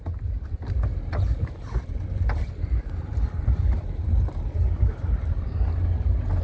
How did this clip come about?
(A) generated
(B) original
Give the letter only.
B